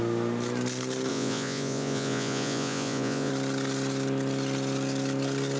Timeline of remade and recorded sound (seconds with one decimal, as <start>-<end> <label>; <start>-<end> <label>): 0.0-1.1 recorded; 1.1-3.3 remade; 3.3-5.6 recorded